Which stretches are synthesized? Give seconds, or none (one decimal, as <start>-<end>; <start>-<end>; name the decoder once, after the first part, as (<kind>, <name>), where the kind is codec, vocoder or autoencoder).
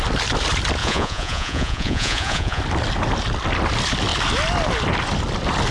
0.8-2.6 (vocoder, Vocos)